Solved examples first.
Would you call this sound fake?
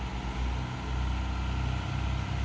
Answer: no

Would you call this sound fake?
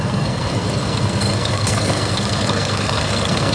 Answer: yes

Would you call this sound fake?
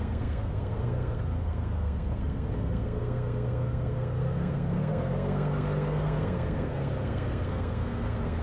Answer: yes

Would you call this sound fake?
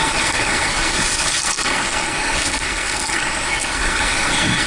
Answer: yes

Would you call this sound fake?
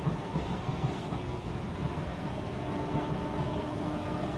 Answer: yes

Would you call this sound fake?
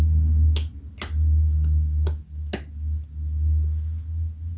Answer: no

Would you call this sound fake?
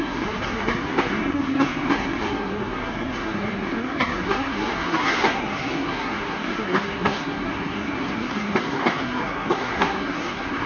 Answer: yes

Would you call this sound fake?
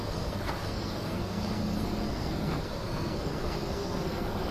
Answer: yes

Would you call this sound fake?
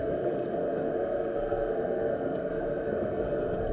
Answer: yes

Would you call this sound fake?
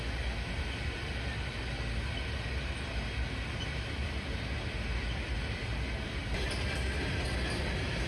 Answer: no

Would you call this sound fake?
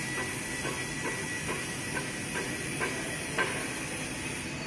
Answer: no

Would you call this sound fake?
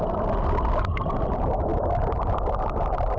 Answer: no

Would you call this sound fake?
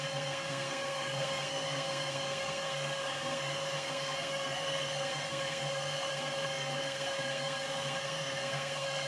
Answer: yes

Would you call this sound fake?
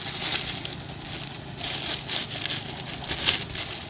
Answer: no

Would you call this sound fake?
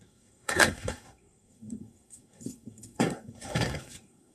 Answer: yes